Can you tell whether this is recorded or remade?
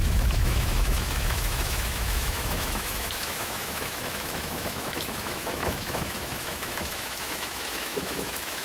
remade